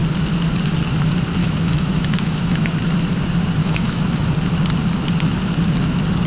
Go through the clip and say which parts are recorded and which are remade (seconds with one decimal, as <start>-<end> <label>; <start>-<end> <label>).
0.0-1.4 recorded; 1.4-2.7 remade; 2.7-3.6 recorded; 3.6-4.2 remade; 4.2-6.3 recorded